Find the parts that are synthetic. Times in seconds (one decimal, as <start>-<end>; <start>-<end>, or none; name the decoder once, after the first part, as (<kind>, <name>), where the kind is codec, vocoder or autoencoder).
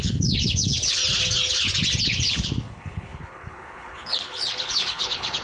0.0-1.0 (codec, HILCodec); 2.0-5.4